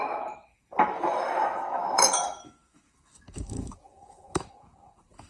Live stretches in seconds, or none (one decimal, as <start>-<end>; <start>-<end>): none